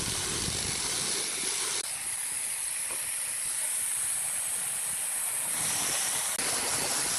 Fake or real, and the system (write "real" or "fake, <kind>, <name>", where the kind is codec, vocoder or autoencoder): real